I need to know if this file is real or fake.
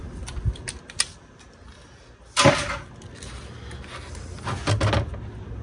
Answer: real